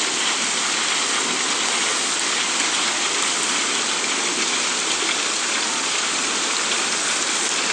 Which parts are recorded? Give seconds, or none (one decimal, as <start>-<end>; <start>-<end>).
0.0-7.7